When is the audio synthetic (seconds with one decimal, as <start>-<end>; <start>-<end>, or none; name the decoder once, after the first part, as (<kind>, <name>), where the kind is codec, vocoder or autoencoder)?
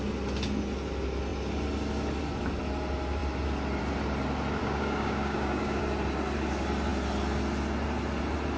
4.6-5.8 (codec, DAC)